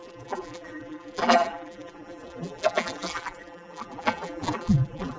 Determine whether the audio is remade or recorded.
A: remade